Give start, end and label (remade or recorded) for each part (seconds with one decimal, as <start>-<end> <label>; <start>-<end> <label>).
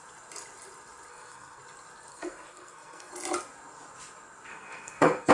0.0-1.1 recorded; 1.1-1.6 remade; 1.6-2.1 recorded; 2.1-3.1 remade; 3.1-4.5 recorded; 4.5-5.3 remade